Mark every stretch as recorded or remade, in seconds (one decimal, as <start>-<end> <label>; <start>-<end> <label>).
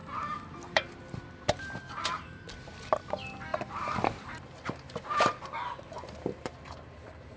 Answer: 0.0-0.9 remade; 0.9-3.5 recorded; 3.5-6.7 remade; 6.7-7.4 recorded